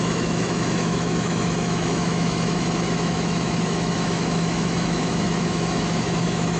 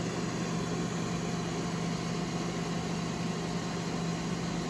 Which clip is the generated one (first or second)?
first